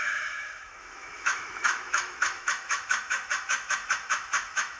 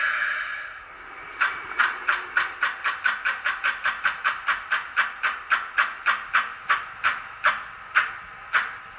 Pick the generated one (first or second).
first